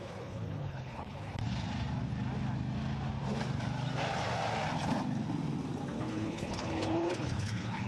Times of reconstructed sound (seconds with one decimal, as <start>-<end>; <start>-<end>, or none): 0.0-1.4; 6.0-7.9